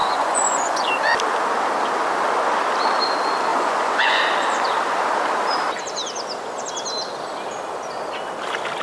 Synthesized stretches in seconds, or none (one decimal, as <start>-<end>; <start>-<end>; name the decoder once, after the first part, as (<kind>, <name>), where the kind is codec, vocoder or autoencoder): 0.0-0.9 (vocoder, Vocos); 3.5-4.2